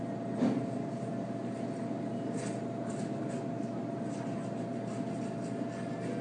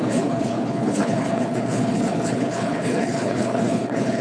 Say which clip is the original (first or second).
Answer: first